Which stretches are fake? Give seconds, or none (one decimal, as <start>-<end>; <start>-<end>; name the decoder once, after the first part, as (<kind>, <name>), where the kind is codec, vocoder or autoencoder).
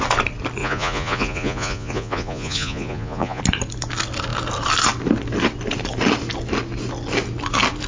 0.6-3.4 (vocoder, Vocos)